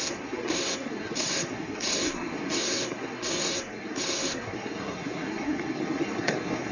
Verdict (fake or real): fake